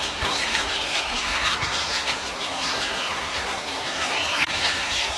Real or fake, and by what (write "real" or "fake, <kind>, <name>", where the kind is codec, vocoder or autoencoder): fake, codec, SNAC